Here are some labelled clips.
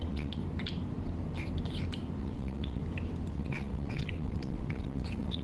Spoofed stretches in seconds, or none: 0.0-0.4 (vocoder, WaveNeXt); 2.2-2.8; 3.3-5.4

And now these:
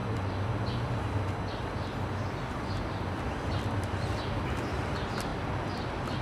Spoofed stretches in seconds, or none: none

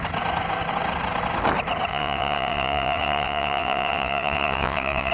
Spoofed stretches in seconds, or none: 1.9-5.1 (vocoder, WaveNeXt)

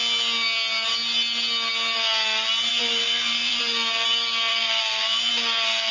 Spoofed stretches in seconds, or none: 2.7-3.6 (vocoder, BigVGAN v2); 4.5-5.3

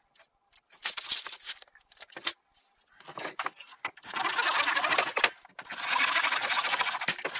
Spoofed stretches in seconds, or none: none

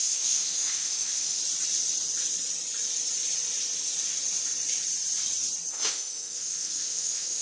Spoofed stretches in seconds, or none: 0.0-1.4 (autoencoder, DAC-VAE); 5.7-7.4

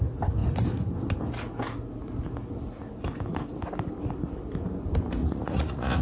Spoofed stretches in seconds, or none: 5.2-6.0 (vocoder, Vocos)